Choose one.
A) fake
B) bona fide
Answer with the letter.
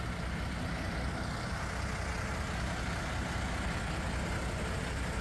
B